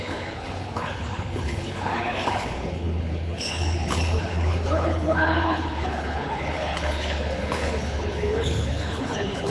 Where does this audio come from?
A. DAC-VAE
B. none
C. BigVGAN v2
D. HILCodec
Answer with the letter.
D